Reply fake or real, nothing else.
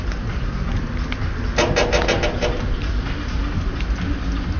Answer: real